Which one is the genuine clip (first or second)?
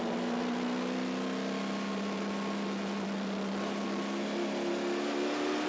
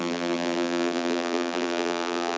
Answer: first